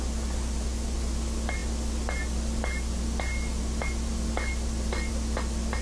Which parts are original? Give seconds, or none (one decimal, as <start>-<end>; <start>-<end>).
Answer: 0.0-5.8